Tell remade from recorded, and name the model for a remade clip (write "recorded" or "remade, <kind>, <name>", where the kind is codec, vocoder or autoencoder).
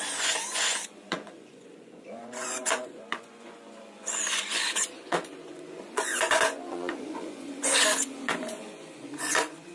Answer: remade, vocoder, Vocos